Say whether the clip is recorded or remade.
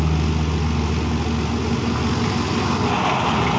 recorded